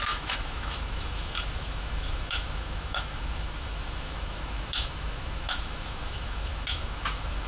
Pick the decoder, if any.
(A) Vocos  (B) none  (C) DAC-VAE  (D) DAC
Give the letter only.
C